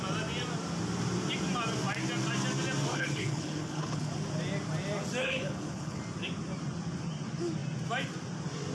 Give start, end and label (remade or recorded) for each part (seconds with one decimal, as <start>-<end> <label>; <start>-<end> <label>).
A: 0.0-2.9 recorded; 2.9-4.1 remade; 4.1-5.2 recorded; 5.2-6.0 remade; 6.0-8.7 recorded